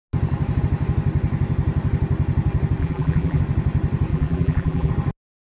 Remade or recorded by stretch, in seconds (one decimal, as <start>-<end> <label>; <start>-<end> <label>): 0.0-2.8 recorded; 2.8-3.4 remade; 3.4-4.1 recorded; 4.1-4.9 remade; 4.9-5.5 recorded